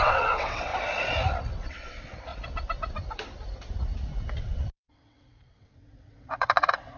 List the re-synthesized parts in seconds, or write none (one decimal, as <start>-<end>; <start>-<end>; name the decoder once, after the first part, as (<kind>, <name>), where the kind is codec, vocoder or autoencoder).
0.0-0.7 (vocoder, WaveNeXt); 1.5-2.3; 4.4-7.0